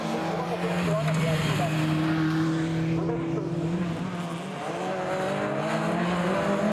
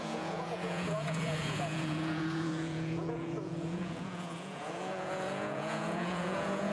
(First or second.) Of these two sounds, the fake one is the second